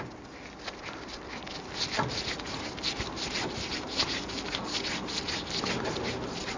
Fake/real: real